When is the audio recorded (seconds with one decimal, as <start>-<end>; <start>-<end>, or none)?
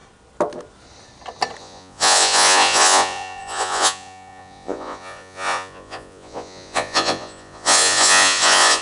0.0-1.6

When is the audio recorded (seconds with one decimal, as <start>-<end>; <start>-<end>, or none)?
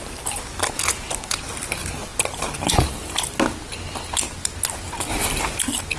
0.0-5.1; 5.6-6.0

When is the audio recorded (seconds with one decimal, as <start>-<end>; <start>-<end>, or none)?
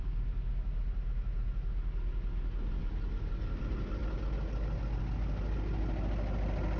0.0-6.8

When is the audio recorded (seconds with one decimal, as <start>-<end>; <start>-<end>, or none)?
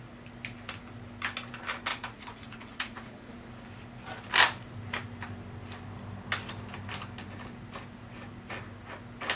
0.0-1.9; 3.3-9.4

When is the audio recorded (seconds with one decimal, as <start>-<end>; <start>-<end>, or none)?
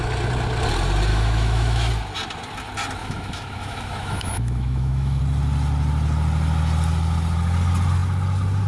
0.0-1.1; 1.9-3.0; 5.2-8.7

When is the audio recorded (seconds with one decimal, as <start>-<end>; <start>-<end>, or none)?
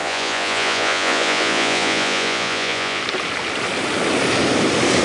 3.0-5.0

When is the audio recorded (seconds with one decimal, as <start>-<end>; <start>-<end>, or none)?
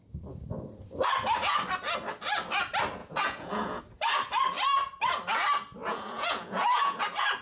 0.0-3.0; 3.8-5.8; 7.0-7.4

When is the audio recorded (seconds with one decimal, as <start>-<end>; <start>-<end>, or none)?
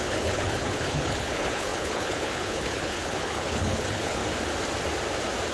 4.2-5.5